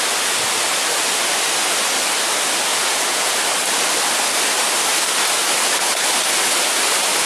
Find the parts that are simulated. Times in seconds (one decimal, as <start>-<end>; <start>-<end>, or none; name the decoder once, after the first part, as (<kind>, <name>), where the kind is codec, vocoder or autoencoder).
2.7-3.4 (vocoder, Vocos)